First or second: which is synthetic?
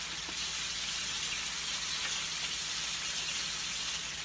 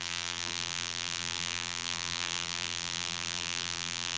second